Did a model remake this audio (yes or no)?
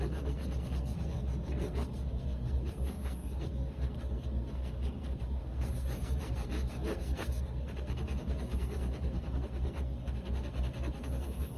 yes